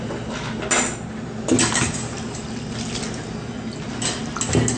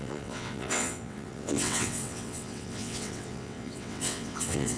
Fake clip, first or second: second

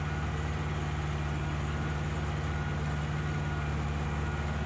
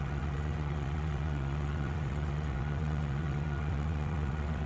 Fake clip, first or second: second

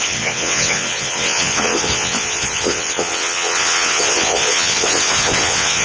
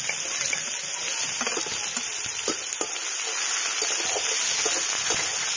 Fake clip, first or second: first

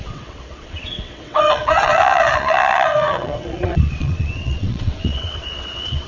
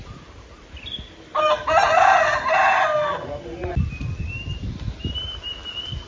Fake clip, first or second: first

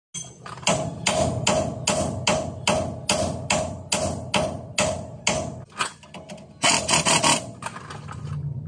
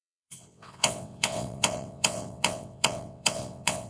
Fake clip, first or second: second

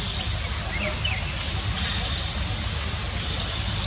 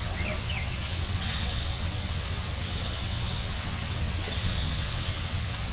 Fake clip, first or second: second